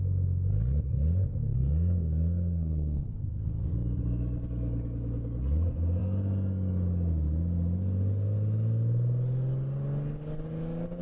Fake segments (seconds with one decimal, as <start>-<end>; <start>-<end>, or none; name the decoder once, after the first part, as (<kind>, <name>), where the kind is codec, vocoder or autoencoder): 1.3-3.7 (codec, SNAC)